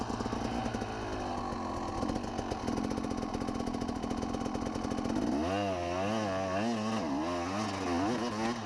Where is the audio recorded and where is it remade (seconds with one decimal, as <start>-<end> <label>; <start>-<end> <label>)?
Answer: 0.0-8.7 recorded